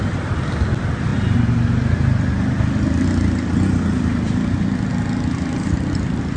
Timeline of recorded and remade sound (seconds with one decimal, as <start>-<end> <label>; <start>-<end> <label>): 0.0-6.4 recorded